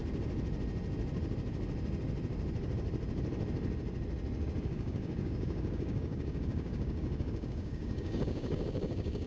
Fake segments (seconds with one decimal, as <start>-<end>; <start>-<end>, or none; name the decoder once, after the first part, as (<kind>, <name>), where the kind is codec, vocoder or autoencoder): 4.6-9.3 (codec, DAC)